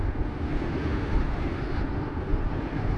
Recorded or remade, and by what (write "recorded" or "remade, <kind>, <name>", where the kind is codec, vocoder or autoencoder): remade, autoencoder, DAC-VAE